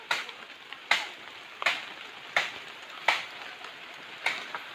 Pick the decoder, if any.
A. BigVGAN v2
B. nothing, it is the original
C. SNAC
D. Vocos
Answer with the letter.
B